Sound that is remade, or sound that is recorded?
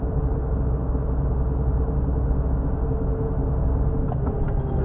recorded